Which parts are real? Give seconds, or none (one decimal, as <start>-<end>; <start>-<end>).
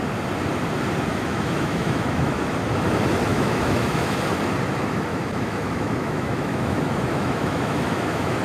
0.0-1.1; 2.5-3.3; 4.2-5.1